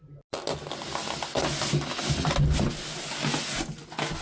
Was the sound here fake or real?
real